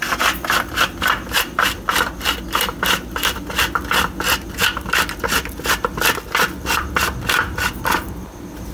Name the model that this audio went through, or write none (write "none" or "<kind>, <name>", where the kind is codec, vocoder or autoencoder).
none